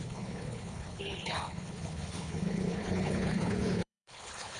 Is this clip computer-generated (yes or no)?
yes